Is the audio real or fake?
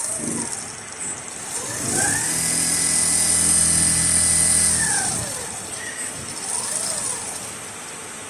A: real